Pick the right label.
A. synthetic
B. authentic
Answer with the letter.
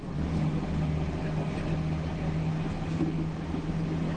B